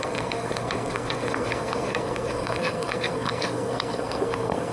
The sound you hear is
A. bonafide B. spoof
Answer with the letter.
B